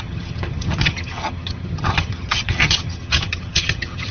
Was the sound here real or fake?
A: fake